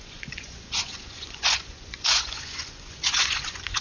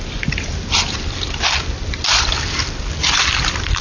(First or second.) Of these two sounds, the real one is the second